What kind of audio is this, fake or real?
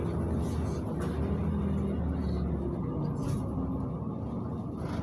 real